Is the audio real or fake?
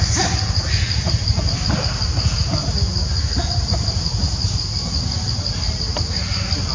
real